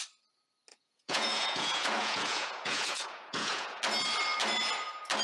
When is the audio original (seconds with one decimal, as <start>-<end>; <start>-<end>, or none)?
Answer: 0.0-0.7; 3.8-5.2